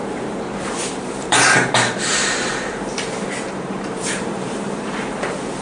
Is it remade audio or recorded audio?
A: remade